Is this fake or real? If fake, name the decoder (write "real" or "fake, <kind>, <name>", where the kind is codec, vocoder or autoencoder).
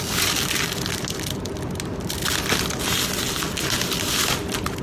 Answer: real